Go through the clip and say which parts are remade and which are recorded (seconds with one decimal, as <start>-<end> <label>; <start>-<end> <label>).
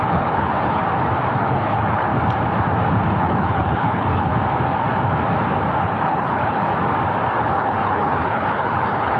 0.0-0.8 remade; 0.8-1.4 recorded; 1.4-2.1 remade; 2.1-3.2 recorded; 3.2-4.3 remade; 4.3-5.8 recorded; 5.8-6.7 remade; 6.7-7.4 recorded; 7.4-9.2 remade